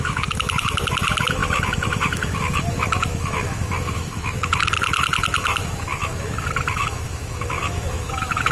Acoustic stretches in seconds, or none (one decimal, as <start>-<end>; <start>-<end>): none